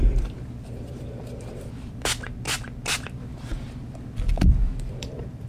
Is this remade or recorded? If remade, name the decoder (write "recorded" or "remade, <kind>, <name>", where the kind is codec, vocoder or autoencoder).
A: remade, vocoder, BigVGAN v2